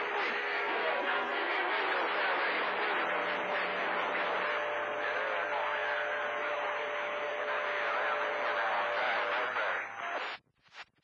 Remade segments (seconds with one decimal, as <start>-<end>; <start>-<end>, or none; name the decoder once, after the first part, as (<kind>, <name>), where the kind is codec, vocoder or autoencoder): 0.4-1.8 (codec, SNAC)